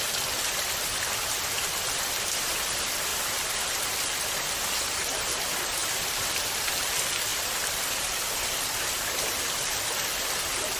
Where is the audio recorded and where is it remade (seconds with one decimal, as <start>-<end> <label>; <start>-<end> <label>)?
0.0-1.8 recorded; 1.8-2.6 remade; 2.6-3.1 recorded; 3.1-4.2 remade; 4.2-5.8 recorded; 5.8-6.7 remade; 6.7-7.3 recorded; 7.3-10.3 remade; 10.3-10.8 recorded